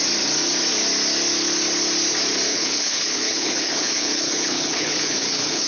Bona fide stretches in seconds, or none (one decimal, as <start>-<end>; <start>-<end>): 0.0-2.5